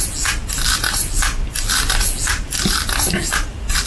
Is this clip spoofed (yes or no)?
no